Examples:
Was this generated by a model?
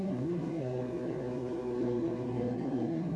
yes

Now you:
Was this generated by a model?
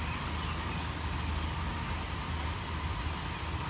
no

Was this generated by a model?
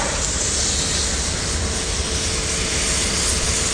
no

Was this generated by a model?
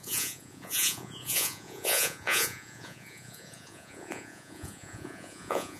yes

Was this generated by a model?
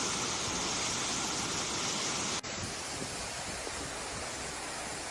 no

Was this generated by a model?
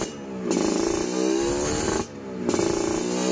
no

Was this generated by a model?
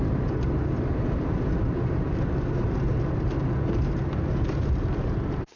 no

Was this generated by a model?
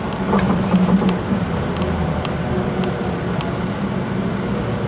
no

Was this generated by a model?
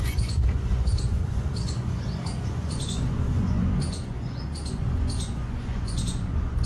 yes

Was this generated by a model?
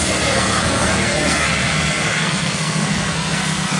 yes